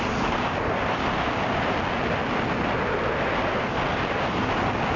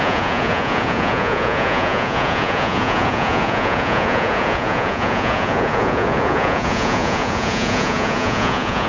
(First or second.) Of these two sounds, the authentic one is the first